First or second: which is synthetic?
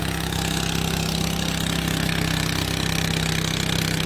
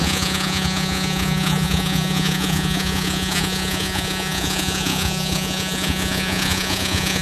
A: second